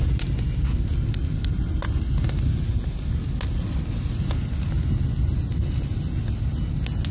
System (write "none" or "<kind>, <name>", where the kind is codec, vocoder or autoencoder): none